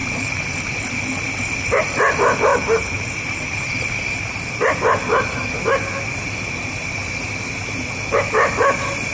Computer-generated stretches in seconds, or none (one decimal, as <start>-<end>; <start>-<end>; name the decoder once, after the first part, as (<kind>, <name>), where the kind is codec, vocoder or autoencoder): 0.0-0.9 (vocoder, BigVGAN v2); 2.5-3.7